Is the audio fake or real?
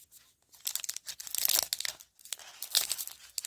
real